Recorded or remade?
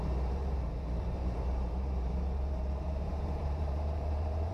remade